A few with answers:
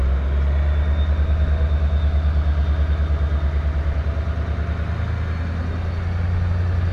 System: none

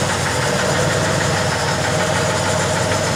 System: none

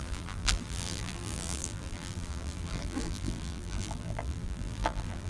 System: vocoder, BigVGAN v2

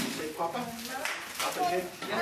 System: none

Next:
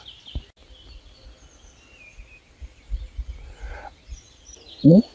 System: none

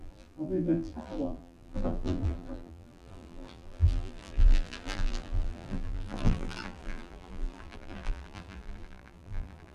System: vocoder, BigVGAN v2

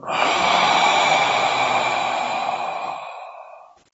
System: none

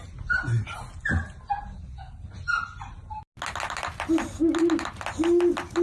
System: none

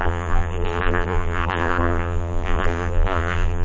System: vocoder, BigVGAN v2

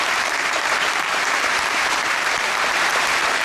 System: vocoder, BigVGAN v2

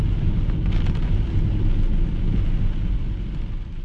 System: none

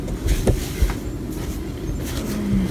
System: none